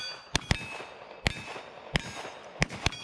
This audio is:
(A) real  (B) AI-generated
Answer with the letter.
A